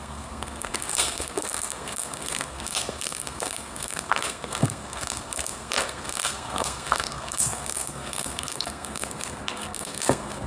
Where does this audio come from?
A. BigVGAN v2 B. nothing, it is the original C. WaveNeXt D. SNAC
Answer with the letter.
D